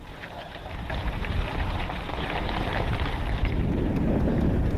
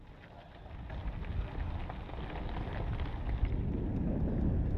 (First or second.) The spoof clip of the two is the first